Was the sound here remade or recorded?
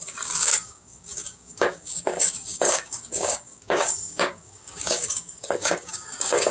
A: remade